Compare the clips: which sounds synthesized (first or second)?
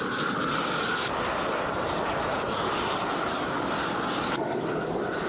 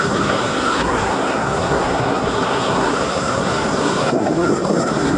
second